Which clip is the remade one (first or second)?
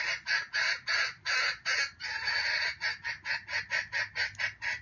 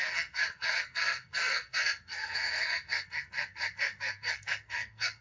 second